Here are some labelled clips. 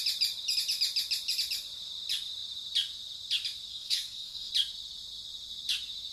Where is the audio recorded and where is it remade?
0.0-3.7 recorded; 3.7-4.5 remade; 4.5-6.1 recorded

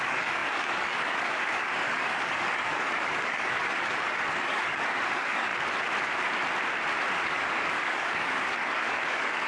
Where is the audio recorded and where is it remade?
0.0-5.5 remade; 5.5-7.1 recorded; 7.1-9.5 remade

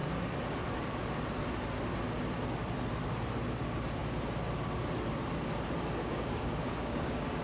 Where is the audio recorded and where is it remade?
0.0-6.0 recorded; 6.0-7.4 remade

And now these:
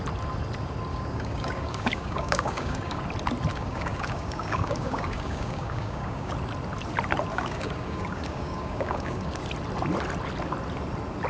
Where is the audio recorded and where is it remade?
0.0-0.9 recorded; 0.9-3.0 remade; 3.0-3.5 recorded; 3.5-6.3 remade; 6.3-7.3 recorded; 7.3-9.4 remade; 9.4-11.3 recorded

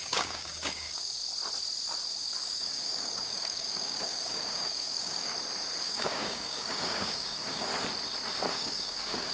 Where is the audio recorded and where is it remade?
0.0-1.2 remade; 1.2-2.2 recorded; 2.2-5.3 remade; 5.3-5.8 recorded; 5.8-7.7 remade; 7.7-8.5 recorded; 8.5-9.3 remade

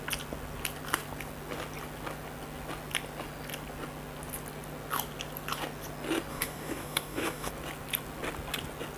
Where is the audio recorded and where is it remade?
0.0-6.3 recorded; 6.3-7.5 remade; 7.5-9.0 recorded

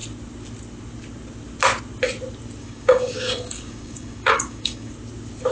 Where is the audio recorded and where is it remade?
0.0-2.6 recorded; 2.6-4.9 remade; 4.9-5.5 recorded

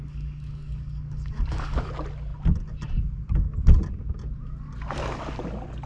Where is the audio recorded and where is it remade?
0.0-1.9 remade; 1.9-5.9 recorded